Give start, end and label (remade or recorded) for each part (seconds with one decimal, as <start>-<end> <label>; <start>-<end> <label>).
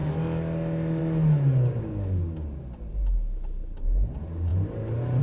0.0-1.7 recorded; 1.7-2.6 remade; 2.6-5.2 recorded